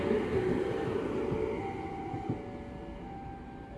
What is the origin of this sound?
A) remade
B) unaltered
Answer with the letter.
B